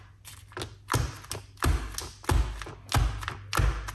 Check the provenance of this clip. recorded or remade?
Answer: recorded